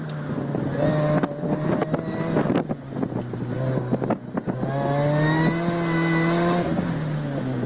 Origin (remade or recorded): recorded